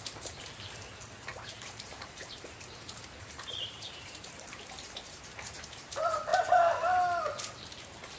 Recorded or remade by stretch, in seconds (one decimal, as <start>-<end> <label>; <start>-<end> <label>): 0.0-6.3 remade; 6.3-8.2 recorded